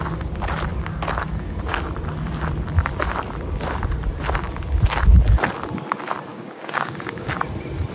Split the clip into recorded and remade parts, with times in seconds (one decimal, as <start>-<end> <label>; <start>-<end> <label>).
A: 0.0-6.3 recorded; 6.3-7.3 remade; 7.3-7.9 recorded